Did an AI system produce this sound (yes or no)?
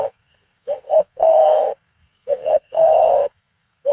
yes